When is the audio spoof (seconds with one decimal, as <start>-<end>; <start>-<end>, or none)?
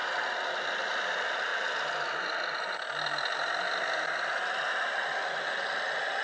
none